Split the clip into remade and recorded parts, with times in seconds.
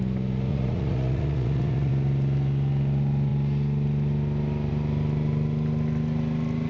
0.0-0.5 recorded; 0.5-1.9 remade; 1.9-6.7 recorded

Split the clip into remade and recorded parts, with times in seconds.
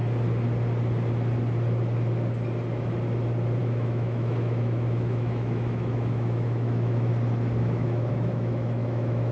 0.0-3.6 recorded; 3.6-7.1 remade; 7.1-7.6 recorded; 7.6-9.3 remade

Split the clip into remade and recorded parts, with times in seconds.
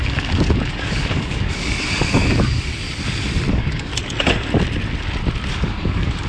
0.0-2.7 remade; 2.7-3.5 recorded; 3.5-3.9 remade; 3.9-5.5 recorded; 5.5-6.3 remade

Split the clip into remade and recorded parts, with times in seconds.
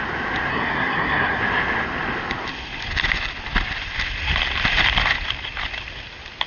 0.0-0.5 recorded; 0.5-1.4 remade; 1.4-6.5 recorded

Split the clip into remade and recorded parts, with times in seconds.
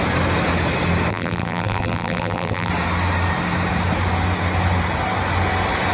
0.0-1.1 recorded; 1.1-2.7 remade; 2.7-5.9 recorded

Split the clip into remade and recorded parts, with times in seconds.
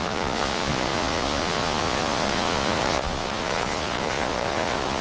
0.0-5.0 remade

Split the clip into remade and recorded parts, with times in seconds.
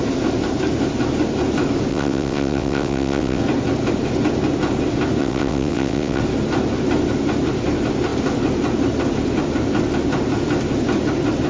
0.0-1.9 recorded; 1.9-3.4 remade; 3.4-5.2 recorded; 5.2-6.2 remade; 6.2-11.5 recorded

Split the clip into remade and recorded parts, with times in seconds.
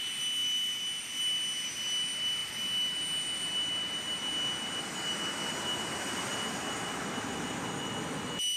0.0-8.6 recorded